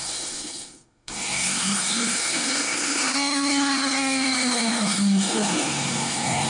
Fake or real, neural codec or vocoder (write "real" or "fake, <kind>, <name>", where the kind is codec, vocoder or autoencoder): fake, codec, SNAC